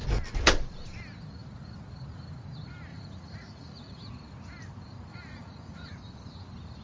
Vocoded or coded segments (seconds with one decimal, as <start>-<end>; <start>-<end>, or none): 2.9-4.1; 5.1-5.9

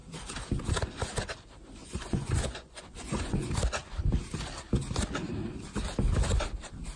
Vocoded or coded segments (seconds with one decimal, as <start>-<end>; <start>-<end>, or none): 1.8-3.5

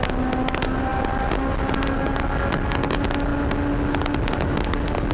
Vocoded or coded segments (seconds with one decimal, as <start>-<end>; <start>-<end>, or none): none

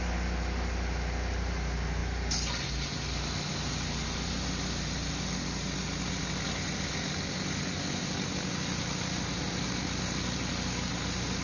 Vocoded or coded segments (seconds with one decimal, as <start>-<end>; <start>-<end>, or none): none

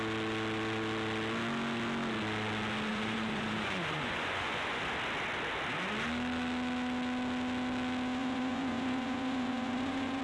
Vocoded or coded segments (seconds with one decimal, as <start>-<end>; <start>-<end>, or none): 2.9-4.8; 8.2-10.2

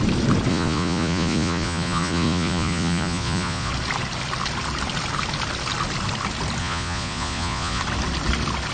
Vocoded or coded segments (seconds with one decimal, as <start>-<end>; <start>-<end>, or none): 0.5-3.7; 6.6-7.8